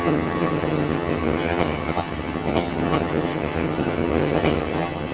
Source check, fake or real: fake